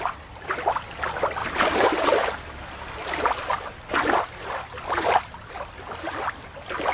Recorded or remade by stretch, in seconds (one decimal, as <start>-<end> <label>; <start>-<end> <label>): 0.0-6.9 recorded